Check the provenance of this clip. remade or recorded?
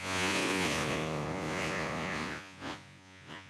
remade